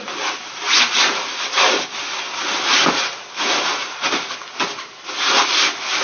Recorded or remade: recorded